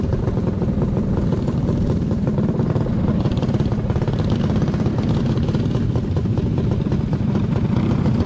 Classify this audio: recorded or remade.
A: recorded